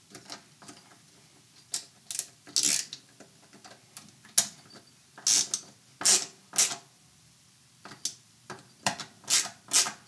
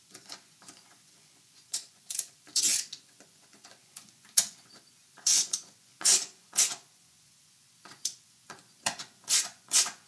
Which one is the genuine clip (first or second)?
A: first